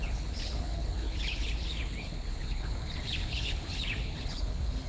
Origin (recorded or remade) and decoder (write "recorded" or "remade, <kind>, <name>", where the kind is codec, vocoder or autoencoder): remade, codec, HILCodec